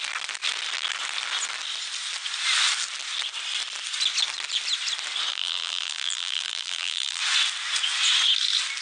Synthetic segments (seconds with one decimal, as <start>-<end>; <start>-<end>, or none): 5.3-7.2